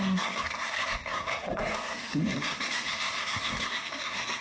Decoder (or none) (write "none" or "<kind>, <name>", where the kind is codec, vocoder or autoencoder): codec, SNAC